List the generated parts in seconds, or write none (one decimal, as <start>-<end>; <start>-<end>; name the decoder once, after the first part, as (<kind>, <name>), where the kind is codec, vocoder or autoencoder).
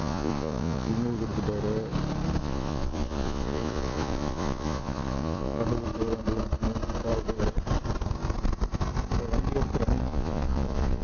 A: 0.0-0.9 (vocoder, Vocos); 2.4-5.6; 10.0-11.0